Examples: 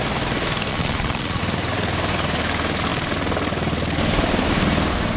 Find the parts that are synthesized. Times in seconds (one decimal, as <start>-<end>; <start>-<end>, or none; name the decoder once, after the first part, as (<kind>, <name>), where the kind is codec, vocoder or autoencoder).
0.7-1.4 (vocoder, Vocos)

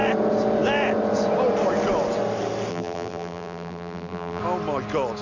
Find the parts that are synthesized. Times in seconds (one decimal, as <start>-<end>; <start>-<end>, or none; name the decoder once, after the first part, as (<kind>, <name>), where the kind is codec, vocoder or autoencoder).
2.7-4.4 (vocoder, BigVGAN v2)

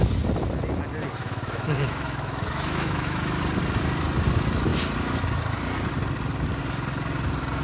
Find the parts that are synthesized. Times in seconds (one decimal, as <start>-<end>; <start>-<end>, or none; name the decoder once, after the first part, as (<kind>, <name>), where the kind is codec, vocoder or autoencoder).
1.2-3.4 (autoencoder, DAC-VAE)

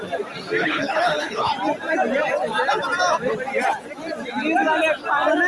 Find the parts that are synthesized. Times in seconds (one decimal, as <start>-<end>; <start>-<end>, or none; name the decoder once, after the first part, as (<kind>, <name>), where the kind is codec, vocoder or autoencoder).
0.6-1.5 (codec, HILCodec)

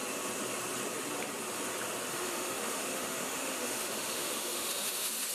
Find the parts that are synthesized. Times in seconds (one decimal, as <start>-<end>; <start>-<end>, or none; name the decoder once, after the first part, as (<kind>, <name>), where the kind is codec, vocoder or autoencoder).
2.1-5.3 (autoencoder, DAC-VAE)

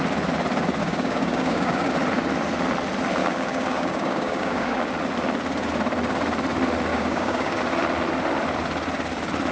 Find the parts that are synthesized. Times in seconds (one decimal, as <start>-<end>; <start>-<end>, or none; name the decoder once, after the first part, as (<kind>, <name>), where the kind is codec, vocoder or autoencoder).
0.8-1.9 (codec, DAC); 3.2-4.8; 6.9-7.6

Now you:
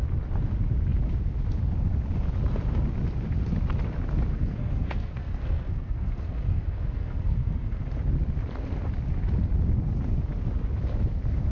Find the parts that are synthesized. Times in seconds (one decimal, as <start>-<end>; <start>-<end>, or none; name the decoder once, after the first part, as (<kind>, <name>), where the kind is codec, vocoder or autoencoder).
4.3-7.8 (codec, SNAC)

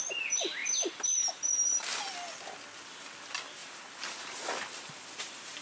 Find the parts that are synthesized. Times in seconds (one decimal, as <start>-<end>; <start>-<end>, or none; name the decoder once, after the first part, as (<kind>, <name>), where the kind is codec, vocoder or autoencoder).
0.6-2.0 (vocoder, BigVGAN v2); 3.6-5.6